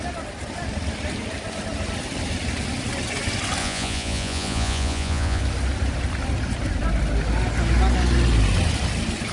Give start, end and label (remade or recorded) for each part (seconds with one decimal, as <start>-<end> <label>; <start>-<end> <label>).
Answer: 0.0-3.6 recorded; 3.6-5.4 remade; 5.4-9.3 recorded